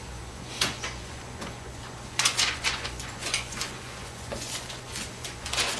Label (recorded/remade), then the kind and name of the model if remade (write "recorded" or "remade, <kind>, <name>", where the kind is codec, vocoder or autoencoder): remade, vocoder, Vocos